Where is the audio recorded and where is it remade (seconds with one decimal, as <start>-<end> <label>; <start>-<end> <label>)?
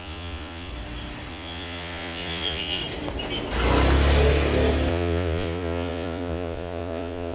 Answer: 0.0-0.7 remade; 0.7-1.3 recorded; 1.3-2.8 remade; 2.8-4.9 recorded; 4.9-7.3 remade